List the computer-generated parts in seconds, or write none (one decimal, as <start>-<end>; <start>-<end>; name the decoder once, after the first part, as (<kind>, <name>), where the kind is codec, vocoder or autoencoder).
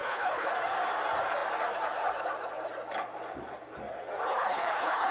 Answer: 0.0-0.5 (codec, HILCodec); 4.3-5.1